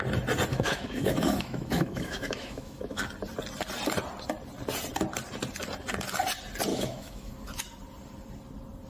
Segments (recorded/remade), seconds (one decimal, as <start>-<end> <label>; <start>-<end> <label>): 0.0-0.5 recorded; 0.5-3.1 remade; 3.1-6.7 recorded; 6.7-7.3 remade; 7.3-8.9 recorded